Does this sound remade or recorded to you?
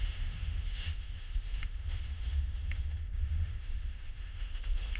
remade